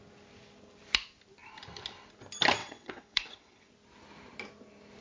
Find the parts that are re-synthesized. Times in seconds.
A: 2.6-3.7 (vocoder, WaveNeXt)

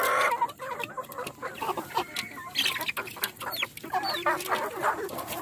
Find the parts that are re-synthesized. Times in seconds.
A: none

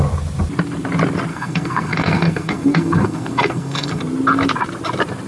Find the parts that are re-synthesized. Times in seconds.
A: 1.3-4.0 (codec, SNAC)

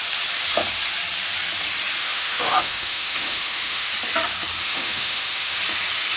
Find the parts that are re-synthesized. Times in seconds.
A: 2.0-3.9 (autoencoder, DAC-VAE); 4.6-5.6

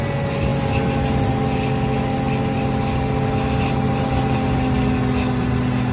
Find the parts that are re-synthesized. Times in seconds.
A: none

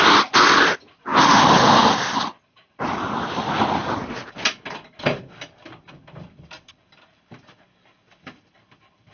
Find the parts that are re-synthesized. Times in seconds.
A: 0.0-9.1 (vocoder, BigVGAN v2)

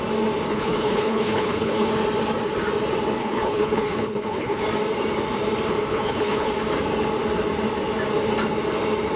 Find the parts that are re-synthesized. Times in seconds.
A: 0.5-1.9 (codec, HILCodec); 3.2-4.6; 5.9-6.5

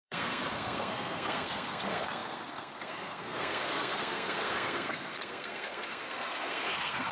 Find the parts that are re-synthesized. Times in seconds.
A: 0.0-7.1 (codec, SNAC)